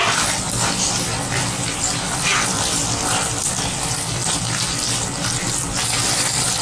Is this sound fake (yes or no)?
no